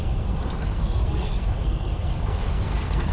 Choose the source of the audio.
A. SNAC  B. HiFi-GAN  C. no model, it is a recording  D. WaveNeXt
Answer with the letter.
A